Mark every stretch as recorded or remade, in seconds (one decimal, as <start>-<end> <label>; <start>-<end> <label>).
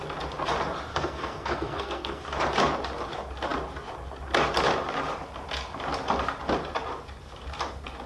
0.0-0.9 recorded; 0.9-2.2 remade; 2.2-8.1 recorded